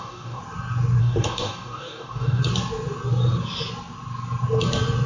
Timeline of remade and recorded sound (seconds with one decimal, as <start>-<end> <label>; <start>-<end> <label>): 0.0-0.4 remade; 0.4-1.0 recorded; 1.0-2.4 remade; 2.4-5.1 recorded